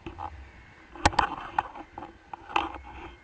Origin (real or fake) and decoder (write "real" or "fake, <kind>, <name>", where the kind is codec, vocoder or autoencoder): real